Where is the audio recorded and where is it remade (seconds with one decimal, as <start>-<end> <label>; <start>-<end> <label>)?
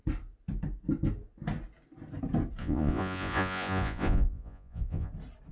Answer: 0.0-2.6 recorded; 2.6-5.1 remade; 5.1-5.5 recorded